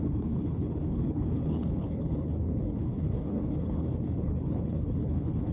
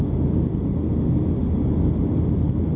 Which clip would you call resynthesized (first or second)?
first